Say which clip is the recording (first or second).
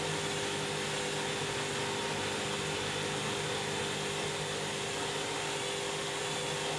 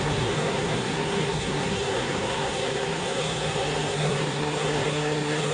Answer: first